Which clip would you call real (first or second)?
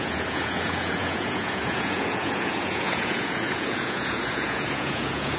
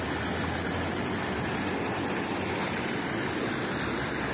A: second